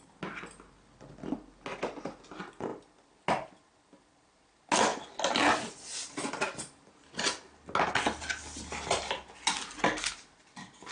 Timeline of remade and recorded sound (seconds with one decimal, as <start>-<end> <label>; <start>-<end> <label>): 0.0-10.9 recorded